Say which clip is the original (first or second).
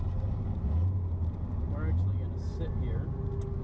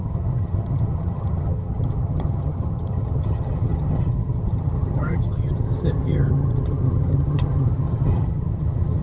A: first